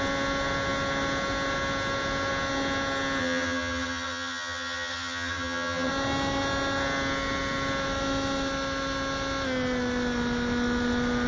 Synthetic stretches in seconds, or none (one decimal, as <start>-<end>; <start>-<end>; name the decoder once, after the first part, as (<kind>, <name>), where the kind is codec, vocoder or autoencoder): 3.2-5.9 (vocoder, HiFi-GAN)